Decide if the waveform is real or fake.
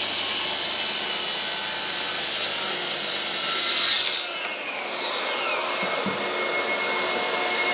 real